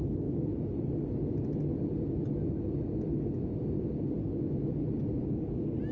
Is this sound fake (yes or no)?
no